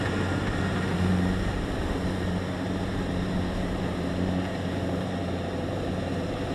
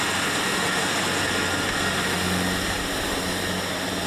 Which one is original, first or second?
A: second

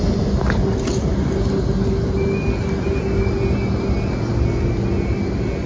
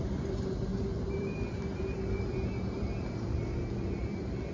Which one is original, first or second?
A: first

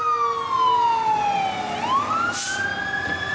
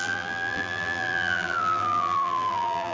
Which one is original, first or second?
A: first